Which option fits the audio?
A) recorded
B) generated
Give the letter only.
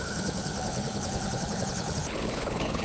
B